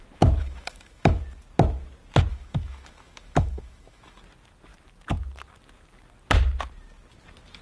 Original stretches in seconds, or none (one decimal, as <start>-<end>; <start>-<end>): 0.0-0.4; 1.2-2.3; 4.2-7.6